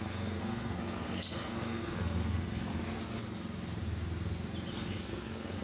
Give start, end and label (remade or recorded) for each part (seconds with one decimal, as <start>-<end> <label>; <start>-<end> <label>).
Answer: 0.0-2.8 remade; 2.8-4.7 recorded; 4.7-5.6 remade